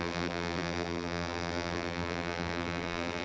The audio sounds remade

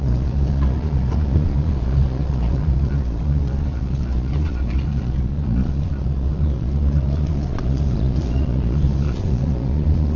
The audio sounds remade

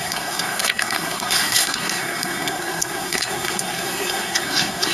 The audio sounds remade